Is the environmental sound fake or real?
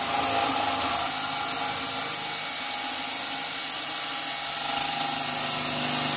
real